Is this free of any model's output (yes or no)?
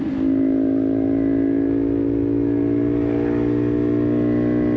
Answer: yes